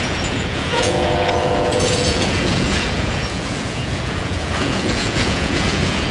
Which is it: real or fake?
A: fake